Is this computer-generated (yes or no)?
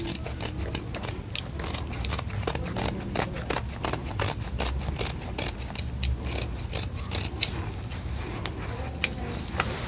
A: no